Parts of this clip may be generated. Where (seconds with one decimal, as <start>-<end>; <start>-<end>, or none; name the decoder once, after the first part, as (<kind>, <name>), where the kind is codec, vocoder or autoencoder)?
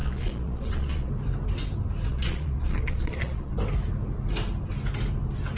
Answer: 0.0-1.1 (vocoder, Vocos); 2.1-3.6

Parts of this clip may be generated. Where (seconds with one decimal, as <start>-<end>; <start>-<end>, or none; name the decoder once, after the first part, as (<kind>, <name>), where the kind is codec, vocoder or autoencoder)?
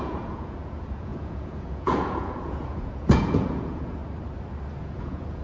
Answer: 0.0-4.0 (vocoder, Vocos); 4.8-5.4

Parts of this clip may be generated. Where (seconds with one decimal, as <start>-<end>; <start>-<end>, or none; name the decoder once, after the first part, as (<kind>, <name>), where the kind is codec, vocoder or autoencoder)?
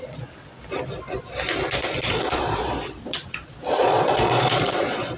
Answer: 0.0-0.6 (vocoder, Vocos); 2.1-5.2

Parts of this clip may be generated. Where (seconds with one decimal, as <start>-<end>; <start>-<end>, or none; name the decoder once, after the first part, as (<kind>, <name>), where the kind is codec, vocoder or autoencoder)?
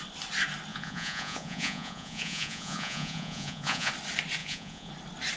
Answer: 0.7-3.9 (vocoder, Vocos); 4.4-4.9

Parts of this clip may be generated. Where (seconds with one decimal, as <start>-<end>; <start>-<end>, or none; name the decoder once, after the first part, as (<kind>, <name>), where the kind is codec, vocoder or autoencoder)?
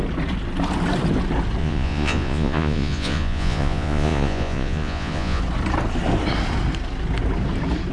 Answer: 1.6-5.4 (vocoder, Vocos)